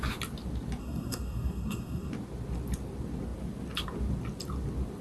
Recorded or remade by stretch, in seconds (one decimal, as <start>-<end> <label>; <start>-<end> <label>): 0.0-0.8 recorded; 0.8-2.1 remade; 2.1-5.0 recorded